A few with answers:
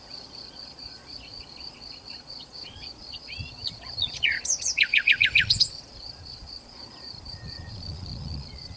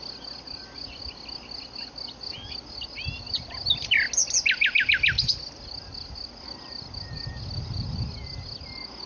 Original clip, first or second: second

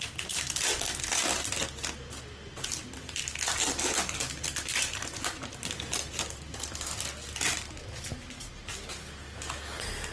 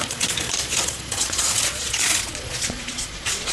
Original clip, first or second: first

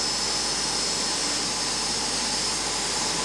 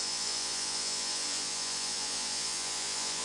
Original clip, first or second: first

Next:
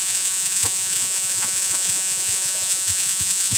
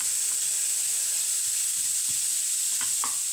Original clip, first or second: second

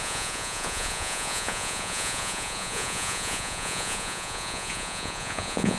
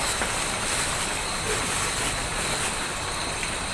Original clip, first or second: second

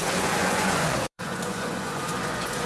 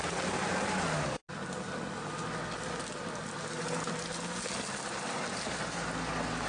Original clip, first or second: second